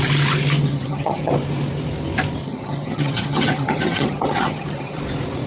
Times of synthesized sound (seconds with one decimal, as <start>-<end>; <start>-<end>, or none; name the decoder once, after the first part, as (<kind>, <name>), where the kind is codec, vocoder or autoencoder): 0.7-1.3 (vocoder, HiFi-GAN); 2.4-5.0